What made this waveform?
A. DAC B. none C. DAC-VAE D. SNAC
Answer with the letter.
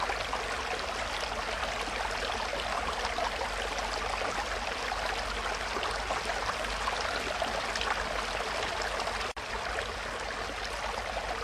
B